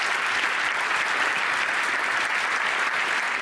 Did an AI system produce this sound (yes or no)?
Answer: no